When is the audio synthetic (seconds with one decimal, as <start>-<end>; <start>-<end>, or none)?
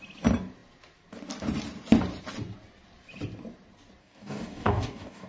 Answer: 4.0-5.3